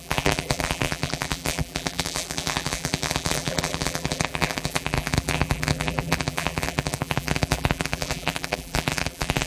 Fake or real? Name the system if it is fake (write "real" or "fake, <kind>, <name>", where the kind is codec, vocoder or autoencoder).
fake, vocoder, BigVGAN v2